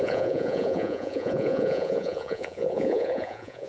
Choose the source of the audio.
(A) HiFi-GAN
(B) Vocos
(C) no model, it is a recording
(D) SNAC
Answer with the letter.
B